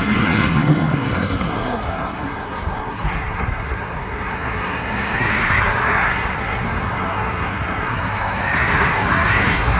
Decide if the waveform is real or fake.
fake